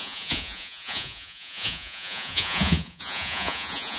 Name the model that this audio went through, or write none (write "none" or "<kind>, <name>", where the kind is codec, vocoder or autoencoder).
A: vocoder, Vocos